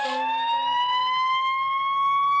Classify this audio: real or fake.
real